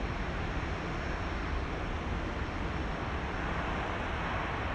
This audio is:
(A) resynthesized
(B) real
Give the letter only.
B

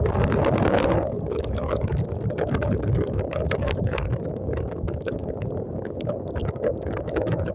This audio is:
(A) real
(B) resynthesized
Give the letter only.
B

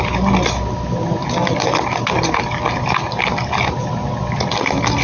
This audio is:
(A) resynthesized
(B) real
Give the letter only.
B